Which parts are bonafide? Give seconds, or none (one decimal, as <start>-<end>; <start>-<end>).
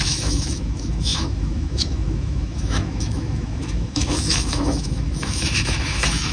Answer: none